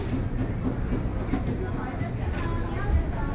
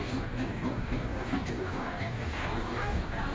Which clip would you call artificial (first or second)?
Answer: second